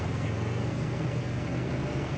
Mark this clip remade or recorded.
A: remade